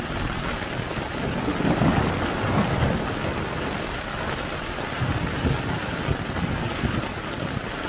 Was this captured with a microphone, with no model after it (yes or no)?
yes